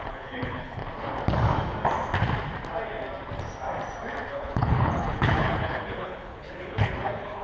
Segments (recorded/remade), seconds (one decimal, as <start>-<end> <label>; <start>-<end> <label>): 0.0-0.8 remade; 0.8-4.3 recorded; 4.3-7.4 remade